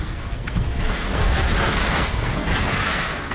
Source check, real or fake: fake